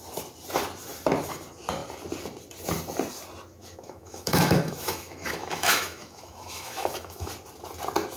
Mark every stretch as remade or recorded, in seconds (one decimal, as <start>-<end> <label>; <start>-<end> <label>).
0.0-3.6 recorded; 3.6-7.3 remade; 7.3-8.2 recorded